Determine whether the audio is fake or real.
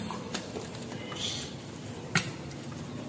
real